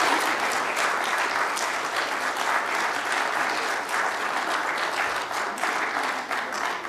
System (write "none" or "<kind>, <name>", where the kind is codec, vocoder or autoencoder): none